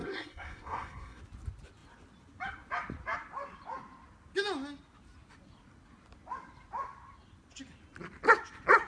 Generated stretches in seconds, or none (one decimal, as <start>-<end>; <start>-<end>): 0.0-1.2